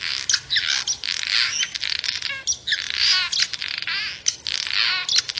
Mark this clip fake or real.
real